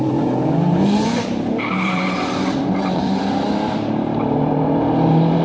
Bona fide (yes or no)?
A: no